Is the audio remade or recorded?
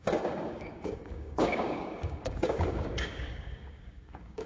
remade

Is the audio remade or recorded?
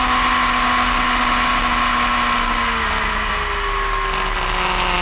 recorded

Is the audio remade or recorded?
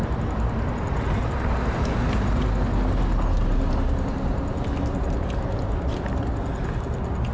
recorded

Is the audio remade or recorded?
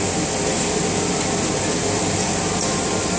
recorded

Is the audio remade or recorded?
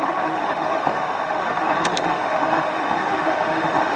remade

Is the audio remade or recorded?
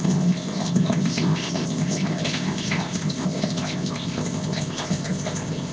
remade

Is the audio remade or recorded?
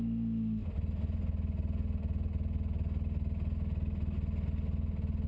recorded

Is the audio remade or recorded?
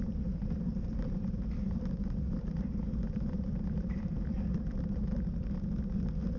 remade